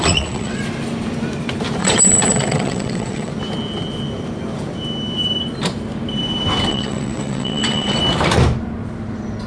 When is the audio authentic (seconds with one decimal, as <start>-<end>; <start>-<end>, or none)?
0.6-1.8; 3.3-6.7; 8.0-9.5